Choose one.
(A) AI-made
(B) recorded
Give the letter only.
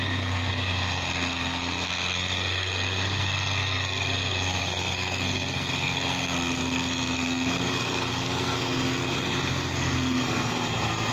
A